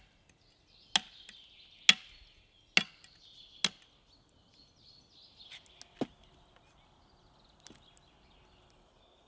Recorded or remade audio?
recorded